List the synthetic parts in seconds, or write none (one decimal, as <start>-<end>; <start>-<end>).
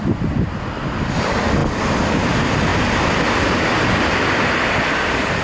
1.6-2.3